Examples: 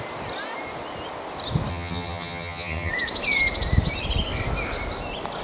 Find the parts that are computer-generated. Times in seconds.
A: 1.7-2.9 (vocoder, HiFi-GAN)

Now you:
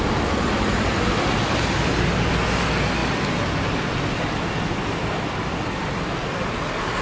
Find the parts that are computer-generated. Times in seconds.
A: none

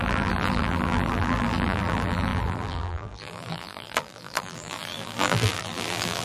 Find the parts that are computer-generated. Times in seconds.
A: 0.0-6.2 (vocoder, BigVGAN v2)

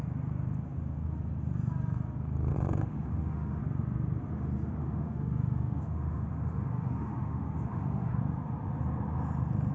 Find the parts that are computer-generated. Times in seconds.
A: 2.5-3.6 (autoencoder, DAC-VAE); 4.8-8.2